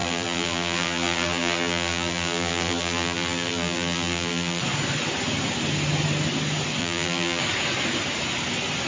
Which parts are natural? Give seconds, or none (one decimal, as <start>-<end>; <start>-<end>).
4.6-6.8; 7.4-8.9